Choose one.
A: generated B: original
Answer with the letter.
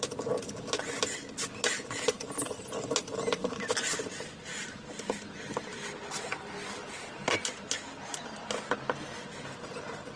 B